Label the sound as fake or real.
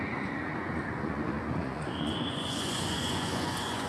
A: fake